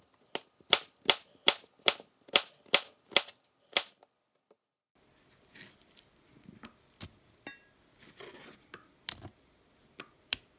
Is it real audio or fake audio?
real